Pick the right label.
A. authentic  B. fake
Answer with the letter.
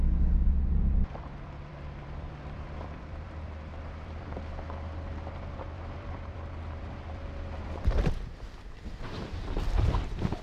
B